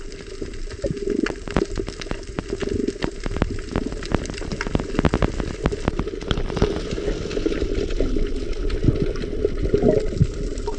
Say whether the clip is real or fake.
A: real